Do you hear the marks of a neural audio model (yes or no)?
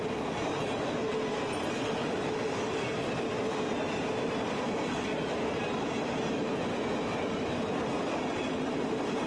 no